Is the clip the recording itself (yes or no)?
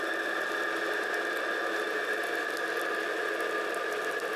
yes